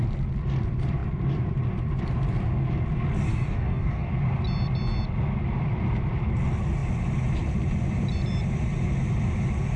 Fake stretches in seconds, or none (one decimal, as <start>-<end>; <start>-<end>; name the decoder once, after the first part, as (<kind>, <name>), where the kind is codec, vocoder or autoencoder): 3.3-4.1 (codec, DAC)